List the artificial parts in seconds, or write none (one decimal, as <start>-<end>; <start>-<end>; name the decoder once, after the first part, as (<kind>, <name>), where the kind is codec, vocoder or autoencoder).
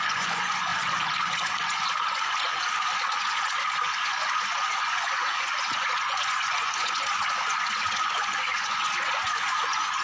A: 0.0-10.0 (vocoder, Vocos)